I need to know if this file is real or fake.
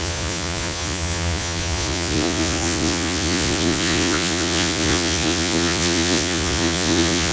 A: fake